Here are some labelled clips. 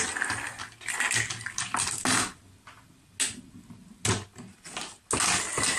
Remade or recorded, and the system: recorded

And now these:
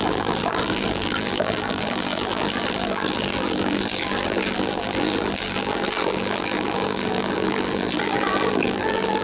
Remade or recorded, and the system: remade, vocoder, BigVGAN v2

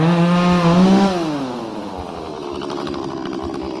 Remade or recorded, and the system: recorded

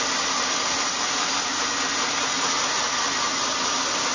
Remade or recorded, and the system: recorded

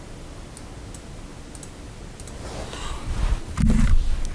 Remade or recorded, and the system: recorded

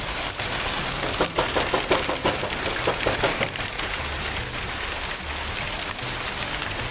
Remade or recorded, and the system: recorded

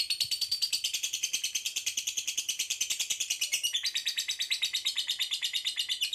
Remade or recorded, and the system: remade, vocoder, BigVGAN v2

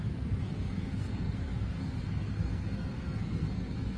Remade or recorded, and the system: remade, codec, SNAC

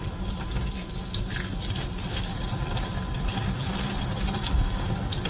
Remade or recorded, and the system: recorded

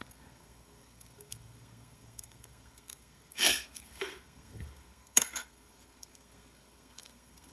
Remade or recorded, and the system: remade, codec, SNAC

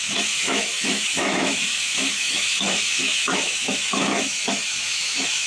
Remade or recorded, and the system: remade, autoencoder, DAC-VAE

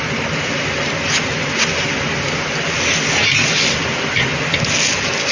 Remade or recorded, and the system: recorded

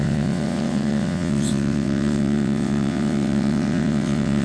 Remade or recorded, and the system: remade, vocoder, WaveNeXt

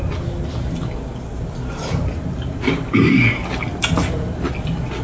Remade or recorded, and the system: recorded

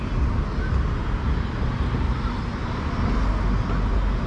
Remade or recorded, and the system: recorded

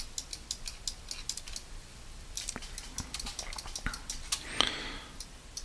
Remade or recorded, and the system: recorded